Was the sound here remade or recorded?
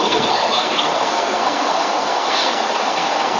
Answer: remade